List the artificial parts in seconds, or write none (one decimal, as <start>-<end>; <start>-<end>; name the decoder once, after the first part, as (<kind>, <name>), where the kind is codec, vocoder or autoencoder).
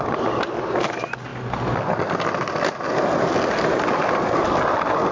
none